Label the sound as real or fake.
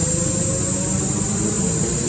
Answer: real